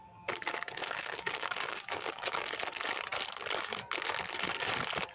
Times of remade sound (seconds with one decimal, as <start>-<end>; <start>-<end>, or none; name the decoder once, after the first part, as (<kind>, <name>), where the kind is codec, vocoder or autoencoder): 0.0-2.5 (codec, DAC)